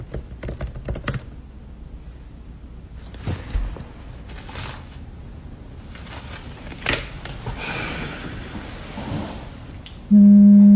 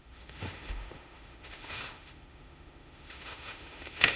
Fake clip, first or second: second